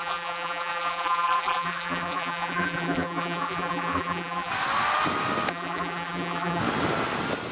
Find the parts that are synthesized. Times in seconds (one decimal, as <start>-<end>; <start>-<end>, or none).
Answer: 0.0-4.5; 5.5-6.6